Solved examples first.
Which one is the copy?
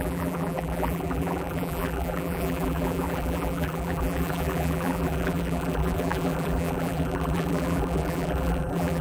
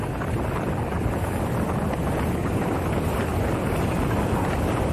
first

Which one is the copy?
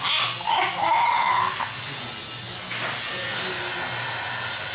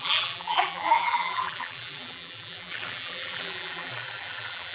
second